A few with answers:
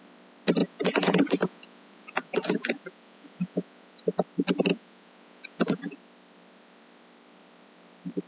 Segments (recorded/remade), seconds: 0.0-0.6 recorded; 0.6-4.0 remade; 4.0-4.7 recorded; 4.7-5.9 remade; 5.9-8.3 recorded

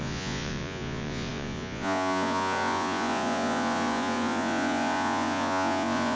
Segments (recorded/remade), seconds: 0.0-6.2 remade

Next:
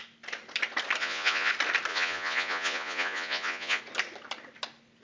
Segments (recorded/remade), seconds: 0.0-1.0 recorded; 1.0-1.5 remade; 1.5-1.9 recorded; 1.9-3.8 remade; 3.8-5.0 recorded

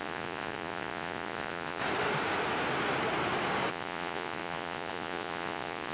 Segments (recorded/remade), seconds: 0.0-1.8 remade; 1.8-3.7 recorded; 3.7-5.9 remade

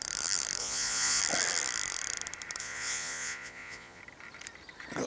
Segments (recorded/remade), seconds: 0.0-0.6 recorded; 0.6-1.2 remade; 1.2-2.6 recorded; 2.6-4.0 remade; 4.0-5.1 recorded